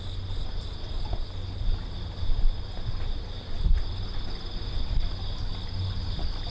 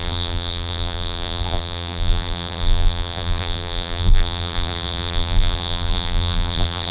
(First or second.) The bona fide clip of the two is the first